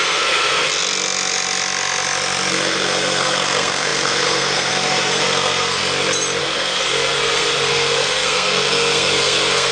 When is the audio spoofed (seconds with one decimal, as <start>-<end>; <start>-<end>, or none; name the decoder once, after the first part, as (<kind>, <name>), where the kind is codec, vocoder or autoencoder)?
0.0-0.7 (codec, SNAC); 2.5-5.8; 6.4-9.7

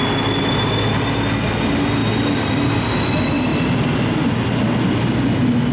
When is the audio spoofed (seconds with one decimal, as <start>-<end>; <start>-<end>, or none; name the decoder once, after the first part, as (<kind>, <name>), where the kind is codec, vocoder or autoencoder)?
none

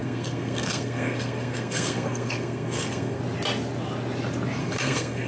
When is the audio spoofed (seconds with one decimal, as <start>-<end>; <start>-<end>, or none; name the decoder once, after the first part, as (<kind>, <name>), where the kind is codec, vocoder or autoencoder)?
0.0-3.2 (codec, SNAC); 4.6-5.3

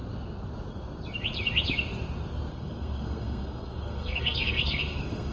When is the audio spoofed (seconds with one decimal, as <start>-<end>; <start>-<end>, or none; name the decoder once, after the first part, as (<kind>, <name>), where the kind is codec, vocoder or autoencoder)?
2.5-5.3 (codec, SNAC)

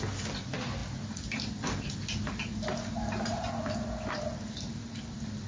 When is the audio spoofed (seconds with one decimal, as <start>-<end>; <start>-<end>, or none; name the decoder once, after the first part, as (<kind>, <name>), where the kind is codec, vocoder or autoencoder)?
none

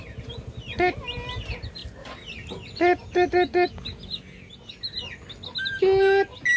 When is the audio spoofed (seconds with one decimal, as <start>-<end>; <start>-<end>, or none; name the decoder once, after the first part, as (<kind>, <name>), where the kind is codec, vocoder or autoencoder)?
none